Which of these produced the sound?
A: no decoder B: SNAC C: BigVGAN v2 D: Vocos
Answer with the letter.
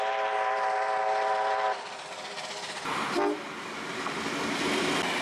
A